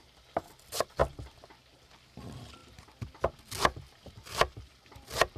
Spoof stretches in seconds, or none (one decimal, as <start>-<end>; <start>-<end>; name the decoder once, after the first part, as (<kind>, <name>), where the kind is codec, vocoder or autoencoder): none